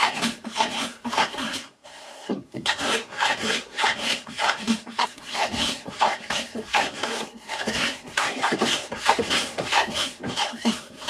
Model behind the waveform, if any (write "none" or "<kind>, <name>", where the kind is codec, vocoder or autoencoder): codec, SNAC